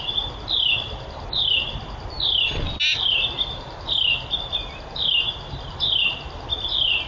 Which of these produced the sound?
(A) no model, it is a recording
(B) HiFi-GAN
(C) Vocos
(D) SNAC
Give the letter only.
A